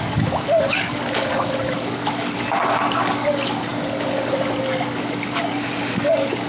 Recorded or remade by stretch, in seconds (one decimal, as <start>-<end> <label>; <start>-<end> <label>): 0.0-6.5 remade